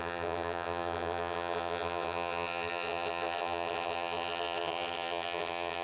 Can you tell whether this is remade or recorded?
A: remade